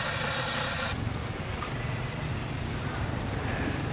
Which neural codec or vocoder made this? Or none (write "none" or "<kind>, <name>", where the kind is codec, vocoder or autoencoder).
vocoder, BigVGAN v2